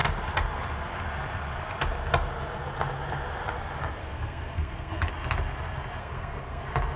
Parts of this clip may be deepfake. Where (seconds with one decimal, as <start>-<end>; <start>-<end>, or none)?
4.0-5.1; 6.0-6.6